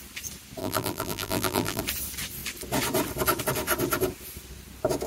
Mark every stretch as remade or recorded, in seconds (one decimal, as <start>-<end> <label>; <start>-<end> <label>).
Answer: 0.0-0.6 recorded; 0.6-1.8 remade; 1.8-5.1 recorded